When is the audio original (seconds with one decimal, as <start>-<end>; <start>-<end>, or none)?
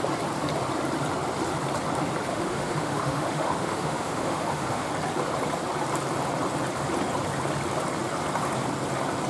0.0-2.3; 4.9-9.3